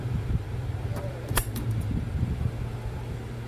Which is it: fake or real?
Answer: fake